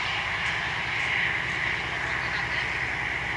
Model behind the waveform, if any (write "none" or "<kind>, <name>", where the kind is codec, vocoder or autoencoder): none